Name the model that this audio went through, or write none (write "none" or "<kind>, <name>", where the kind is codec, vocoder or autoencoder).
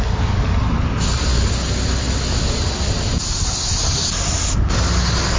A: none